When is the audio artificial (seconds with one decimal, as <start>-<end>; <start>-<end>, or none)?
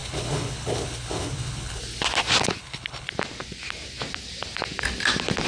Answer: 0.0-1.8; 2.6-3.1